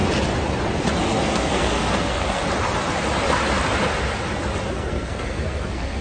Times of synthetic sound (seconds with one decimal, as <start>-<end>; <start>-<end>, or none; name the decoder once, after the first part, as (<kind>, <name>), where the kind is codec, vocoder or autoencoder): 1.0-2.4 (codec, SNAC); 4.7-6.0